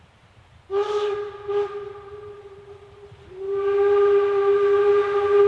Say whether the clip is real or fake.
real